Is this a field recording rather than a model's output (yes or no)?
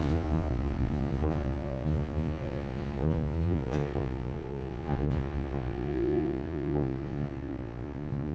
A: no